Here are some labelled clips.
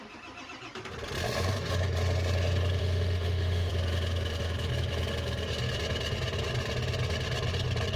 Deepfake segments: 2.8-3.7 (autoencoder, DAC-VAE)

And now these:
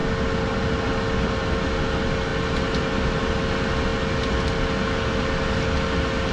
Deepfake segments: none

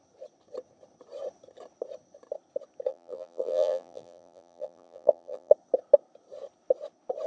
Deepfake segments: 2.9-5.5 (vocoder, BigVGAN v2)

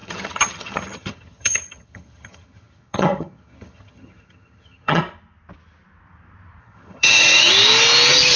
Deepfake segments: 0.0-5.0 (vocoder, HiFi-GAN); 6.6-7.5

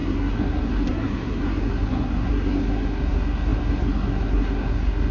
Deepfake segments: 0.0-5.1 (codec, SNAC)

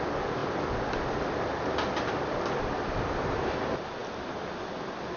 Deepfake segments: 4.0-4.7 (vocoder, BigVGAN v2)

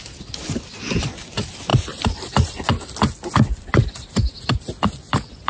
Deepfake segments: none

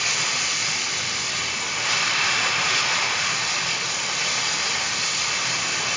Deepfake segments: none